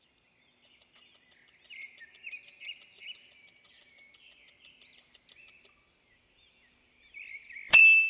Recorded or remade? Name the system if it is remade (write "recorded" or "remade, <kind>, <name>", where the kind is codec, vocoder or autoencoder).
recorded